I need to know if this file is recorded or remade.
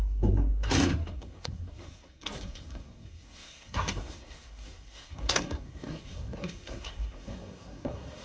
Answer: remade